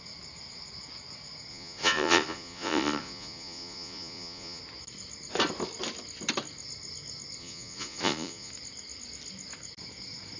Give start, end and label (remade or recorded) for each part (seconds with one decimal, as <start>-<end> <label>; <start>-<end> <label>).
0.0-1.5 recorded; 1.5-4.6 remade; 4.6-7.4 recorded; 7.4-8.5 remade; 8.5-10.4 recorded